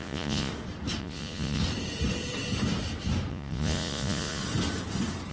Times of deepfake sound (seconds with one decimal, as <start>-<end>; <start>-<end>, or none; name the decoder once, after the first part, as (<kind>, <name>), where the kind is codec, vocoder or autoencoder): 0.0-0.5 (vocoder, Vocos); 1.0-1.6; 3.3-4.4